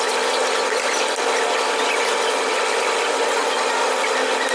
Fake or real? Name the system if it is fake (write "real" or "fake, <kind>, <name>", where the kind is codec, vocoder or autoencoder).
real